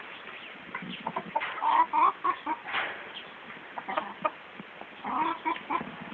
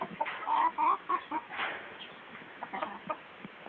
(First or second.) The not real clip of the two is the second